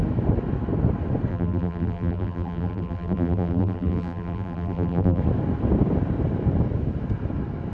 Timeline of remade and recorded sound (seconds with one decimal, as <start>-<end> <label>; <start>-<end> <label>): 0.0-1.3 recorded; 1.3-5.2 remade; 5.2-7.7 recorded